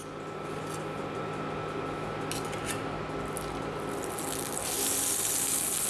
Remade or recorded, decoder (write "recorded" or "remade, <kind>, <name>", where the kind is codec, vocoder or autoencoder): recorded